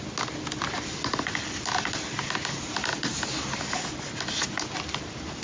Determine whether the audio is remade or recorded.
recorded